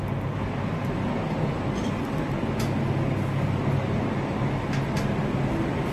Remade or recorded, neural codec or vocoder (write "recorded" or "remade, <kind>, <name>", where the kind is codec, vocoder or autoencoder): recorded